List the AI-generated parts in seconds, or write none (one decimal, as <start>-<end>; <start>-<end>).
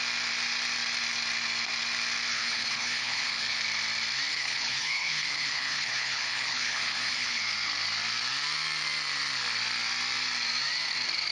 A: 2.3-3.6; 4.3-7.4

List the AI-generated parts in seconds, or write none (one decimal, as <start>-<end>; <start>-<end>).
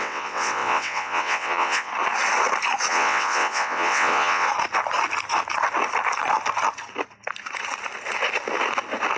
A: 0.0-1.9; 2.9-4.5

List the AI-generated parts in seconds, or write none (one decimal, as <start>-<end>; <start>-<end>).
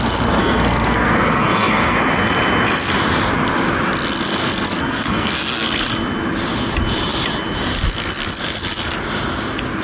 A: 0.4-2.0; 4.4-5.8